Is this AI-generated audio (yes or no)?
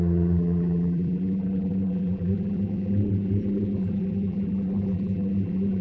yes